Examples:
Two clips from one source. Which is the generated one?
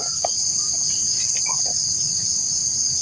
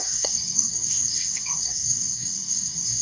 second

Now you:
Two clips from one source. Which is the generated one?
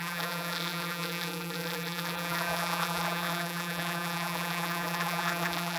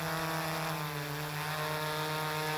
first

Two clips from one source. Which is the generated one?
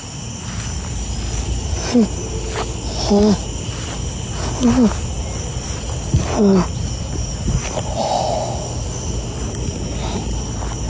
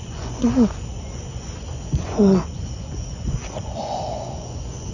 second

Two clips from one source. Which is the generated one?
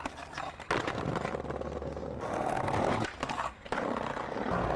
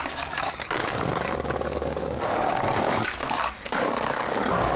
second